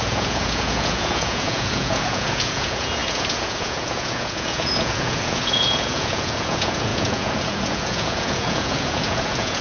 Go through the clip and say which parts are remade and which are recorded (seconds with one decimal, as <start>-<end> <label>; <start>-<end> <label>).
0.0-9.6 remade